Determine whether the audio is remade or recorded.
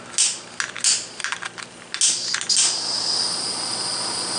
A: recorded